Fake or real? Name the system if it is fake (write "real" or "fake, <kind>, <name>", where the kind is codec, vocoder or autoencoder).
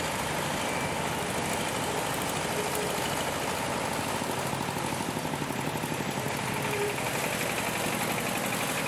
real